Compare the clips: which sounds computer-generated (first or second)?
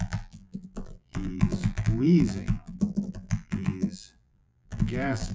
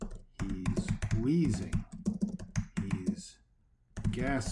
first